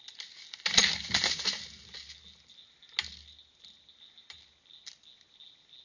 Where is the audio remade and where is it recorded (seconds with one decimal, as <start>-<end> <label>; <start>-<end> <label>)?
0.0-5.8 recorded